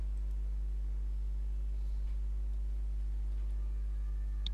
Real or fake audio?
real